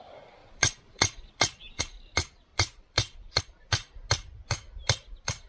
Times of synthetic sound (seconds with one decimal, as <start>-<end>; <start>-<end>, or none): 0.4-1.8; 2.5-3.4

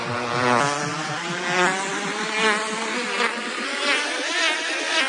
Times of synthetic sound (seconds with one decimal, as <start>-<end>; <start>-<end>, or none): none

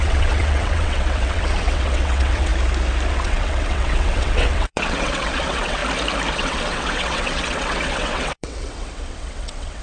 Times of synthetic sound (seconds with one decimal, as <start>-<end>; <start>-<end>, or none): 0.0-2.5; 3.1-5.8; 6.3-9.8